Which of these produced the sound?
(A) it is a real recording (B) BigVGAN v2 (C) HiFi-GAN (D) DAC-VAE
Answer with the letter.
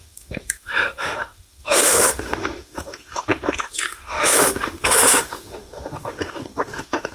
D